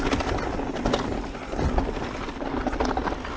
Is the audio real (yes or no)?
yes